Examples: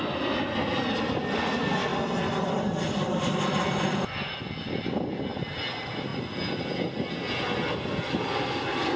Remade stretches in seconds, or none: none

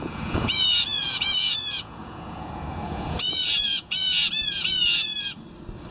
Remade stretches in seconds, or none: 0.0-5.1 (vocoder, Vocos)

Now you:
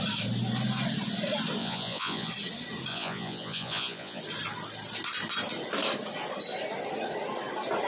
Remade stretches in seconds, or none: 1.6-2.3 (vocoder, Vocos); 2.9-4.2